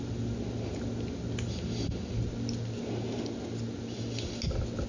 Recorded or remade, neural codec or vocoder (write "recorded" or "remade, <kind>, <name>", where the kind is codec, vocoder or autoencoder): recorded